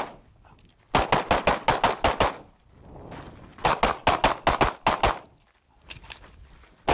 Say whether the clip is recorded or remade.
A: recorded